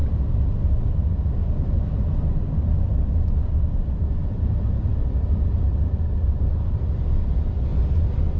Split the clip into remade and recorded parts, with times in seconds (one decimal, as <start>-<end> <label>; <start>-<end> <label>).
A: 0.0-8.4 recorded